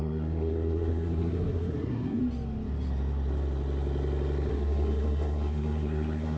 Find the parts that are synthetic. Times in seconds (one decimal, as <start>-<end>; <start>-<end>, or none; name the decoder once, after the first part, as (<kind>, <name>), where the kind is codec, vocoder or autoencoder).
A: 0.0-2.2 (codec, SNAC); 4.5-6.4